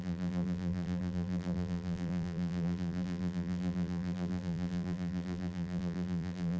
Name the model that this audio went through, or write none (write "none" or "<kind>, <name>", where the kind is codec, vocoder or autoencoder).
vocoder, BigVGAN v2